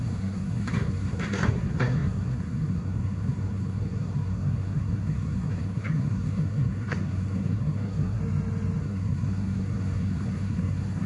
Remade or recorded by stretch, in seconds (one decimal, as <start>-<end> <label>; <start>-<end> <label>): 0.0-8.2 remade; 8.2-8.8 recorded; 8.8-11.1 remade